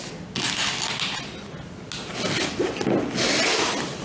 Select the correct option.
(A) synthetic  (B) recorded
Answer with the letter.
B